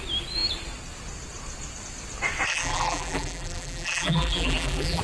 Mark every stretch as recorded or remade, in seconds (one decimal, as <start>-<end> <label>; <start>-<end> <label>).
0.0-2.5 recorded; 2.5-5.0 remade